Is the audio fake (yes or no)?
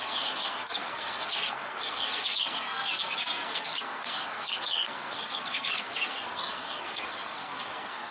yes